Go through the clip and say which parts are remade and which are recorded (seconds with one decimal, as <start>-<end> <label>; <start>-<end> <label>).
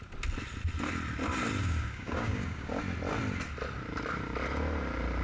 0.0-1.6 recorded; 1.6-2.8 remade; 2.8-5.2 recorded